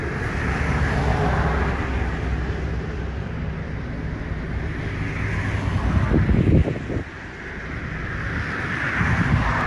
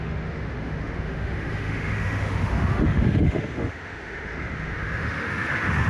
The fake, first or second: second